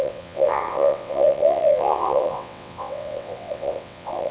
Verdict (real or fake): fake